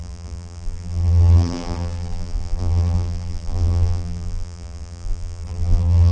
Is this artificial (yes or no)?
yes